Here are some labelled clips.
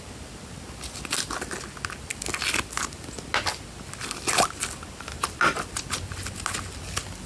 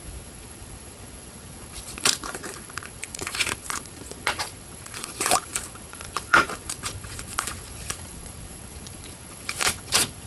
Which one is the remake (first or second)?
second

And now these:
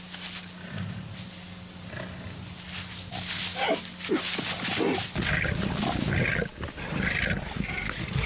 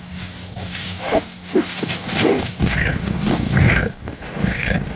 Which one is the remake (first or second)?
second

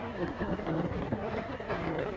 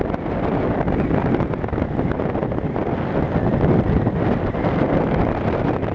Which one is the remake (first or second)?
first